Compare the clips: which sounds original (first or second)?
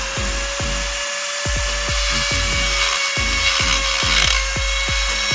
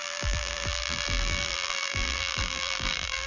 first